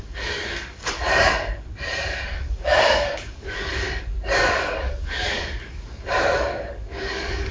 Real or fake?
fake